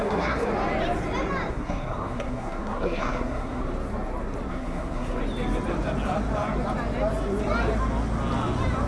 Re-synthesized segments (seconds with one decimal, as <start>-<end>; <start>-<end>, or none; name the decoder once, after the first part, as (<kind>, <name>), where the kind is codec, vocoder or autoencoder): 0.0-0.5 (codec, SNAC); 1.5-3.6; 4.5-5.2